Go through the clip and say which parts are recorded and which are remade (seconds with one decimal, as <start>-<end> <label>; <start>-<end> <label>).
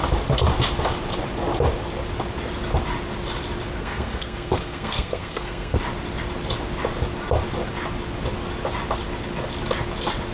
0.0-3.8 recorded; 3.8-5.8 remade; 5.8-10.3 recorded